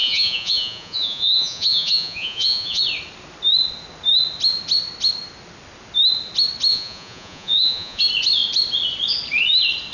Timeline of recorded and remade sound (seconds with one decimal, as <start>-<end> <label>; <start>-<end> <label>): 0.0-2.8 remade; 2.8-6.7 recorded; 6.7-8.0 remade; 8.0-9.9 recorded